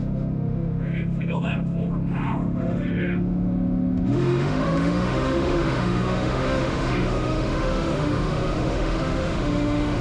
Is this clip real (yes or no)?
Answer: no